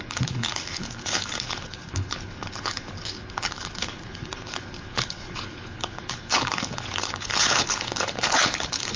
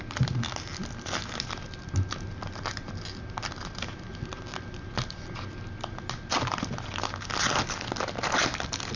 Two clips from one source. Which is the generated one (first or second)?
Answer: first